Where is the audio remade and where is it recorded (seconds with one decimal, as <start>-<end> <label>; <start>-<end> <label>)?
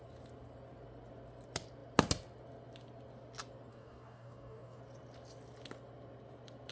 0.0-3.7 recorded; 3.7-4.8 remade; 4.8-6.7 recorded